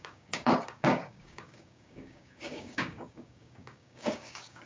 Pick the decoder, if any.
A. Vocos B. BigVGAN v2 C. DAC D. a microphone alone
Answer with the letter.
C